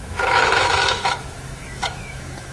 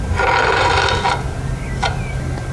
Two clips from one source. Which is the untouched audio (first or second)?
second